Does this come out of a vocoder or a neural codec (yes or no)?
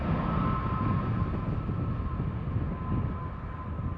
no